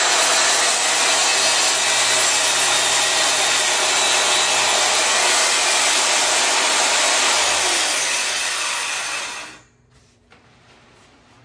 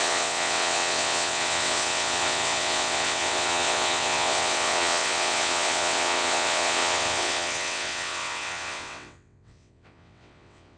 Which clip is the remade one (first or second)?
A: second